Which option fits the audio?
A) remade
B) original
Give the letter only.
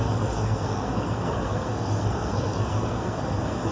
A